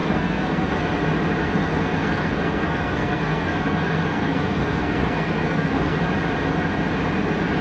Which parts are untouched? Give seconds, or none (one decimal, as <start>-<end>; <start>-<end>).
0.9-1.4; 6.0-7.6